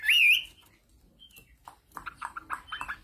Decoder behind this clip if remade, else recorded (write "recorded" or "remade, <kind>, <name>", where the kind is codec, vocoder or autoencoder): recorded